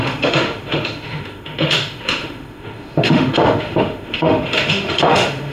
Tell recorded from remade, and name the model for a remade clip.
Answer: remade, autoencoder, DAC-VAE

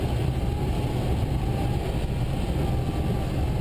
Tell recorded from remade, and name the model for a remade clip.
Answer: recorded